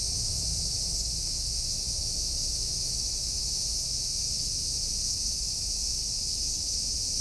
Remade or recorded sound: remade